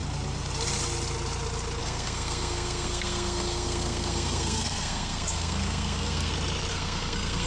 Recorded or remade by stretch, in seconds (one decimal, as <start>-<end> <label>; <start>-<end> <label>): 0.0-1.8 recorded; 1.8-6.3 remade; 6.3-6.7 recorded; 6.7-7.5 remade